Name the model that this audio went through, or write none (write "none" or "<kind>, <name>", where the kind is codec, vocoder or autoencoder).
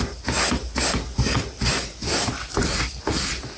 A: none